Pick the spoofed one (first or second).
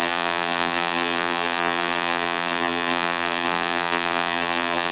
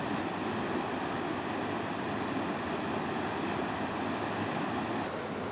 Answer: first